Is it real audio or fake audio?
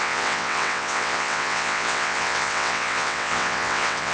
fake